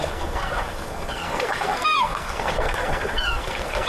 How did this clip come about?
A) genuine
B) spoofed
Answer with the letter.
B